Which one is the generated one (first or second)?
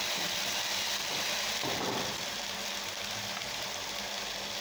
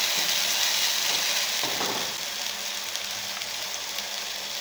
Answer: first